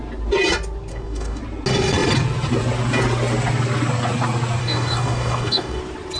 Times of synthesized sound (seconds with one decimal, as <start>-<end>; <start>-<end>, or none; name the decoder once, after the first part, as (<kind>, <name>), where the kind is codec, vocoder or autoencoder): 0.9-1.4 (codec, DAC); 4.6-5.8